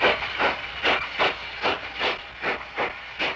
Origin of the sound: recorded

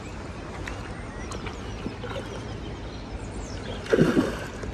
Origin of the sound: recorded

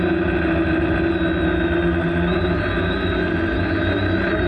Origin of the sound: recorded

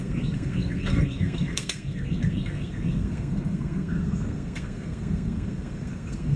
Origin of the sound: remade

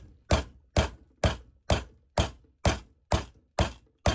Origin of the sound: recorded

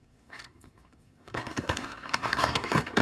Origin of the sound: remade